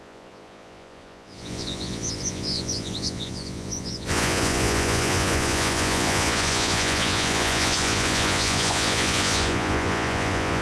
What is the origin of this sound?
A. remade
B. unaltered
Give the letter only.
A